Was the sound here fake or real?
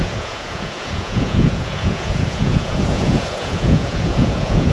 fake